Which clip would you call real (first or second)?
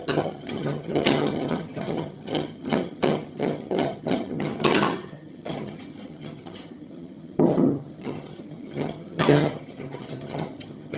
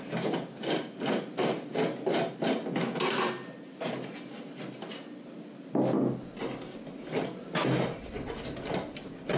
second